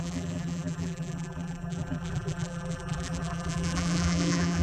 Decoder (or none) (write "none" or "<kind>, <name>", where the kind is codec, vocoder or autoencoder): vocoder, BigVGAN v2